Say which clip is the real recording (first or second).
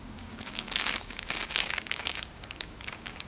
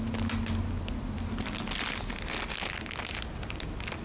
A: second